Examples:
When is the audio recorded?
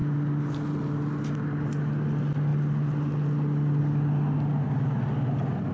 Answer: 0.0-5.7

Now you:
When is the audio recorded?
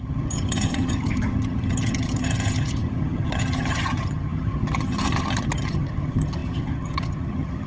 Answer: none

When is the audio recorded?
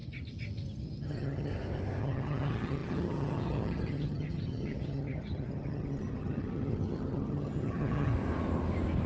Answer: 0.0-1.0; 1.5-2.0; 8.1-9.1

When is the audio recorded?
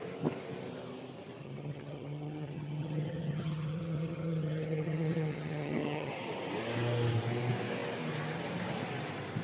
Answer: 0.0-1.4; 6.1-9.4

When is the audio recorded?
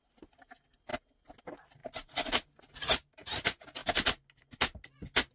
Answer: 0.0-5.3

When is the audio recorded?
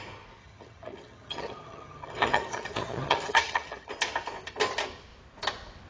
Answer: 0.0-0.4; 3.9-5.9